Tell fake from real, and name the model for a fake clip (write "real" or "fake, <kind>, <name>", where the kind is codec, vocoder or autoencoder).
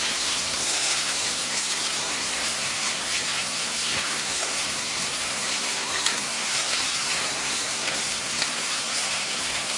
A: fake, codec, SNAC